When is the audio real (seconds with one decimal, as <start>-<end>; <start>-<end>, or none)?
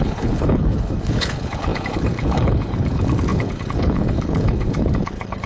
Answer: none